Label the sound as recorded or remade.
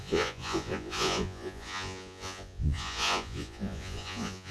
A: remade